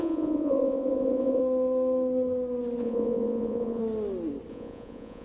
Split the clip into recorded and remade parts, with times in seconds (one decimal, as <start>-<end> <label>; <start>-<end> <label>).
0.0-1.4 remade; 1.4-2.8 recorded; 2.8-3.8 remade; 3.8-4.5 recorded; 4.5-5.2 remade